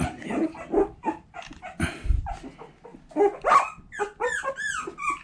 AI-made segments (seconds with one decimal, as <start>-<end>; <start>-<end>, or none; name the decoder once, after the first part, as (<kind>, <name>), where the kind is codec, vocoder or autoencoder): none